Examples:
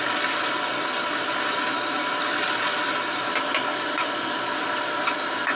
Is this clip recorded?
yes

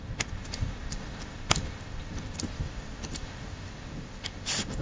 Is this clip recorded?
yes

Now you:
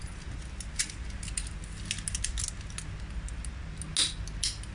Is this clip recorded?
yes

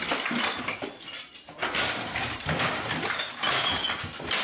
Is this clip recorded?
yes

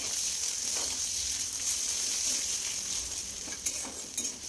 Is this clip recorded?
yes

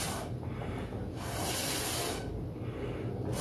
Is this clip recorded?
yes